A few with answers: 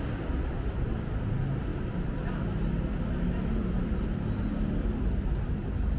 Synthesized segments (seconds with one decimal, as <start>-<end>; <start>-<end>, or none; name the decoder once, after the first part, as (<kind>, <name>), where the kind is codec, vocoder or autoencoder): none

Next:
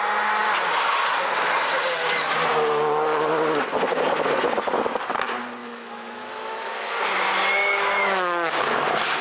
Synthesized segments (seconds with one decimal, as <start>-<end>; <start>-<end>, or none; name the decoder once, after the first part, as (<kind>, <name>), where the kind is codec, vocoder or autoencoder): 5.6-6.7 (autoencoder, DAC-VAE); 7.5-8.5

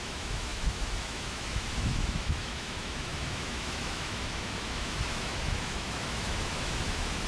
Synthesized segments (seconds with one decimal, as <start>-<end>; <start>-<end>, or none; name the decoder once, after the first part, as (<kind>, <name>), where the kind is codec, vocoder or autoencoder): 0.0-7.3 (autoencoder, DAC-VAE)

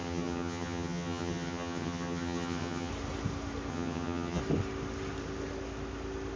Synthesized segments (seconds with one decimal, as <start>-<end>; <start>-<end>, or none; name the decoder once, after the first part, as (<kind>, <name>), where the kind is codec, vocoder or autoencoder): 0.0-2.9 (vocoder, HiFi-GAN); 3.7-4.4